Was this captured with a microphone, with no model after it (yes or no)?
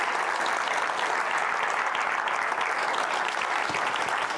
yes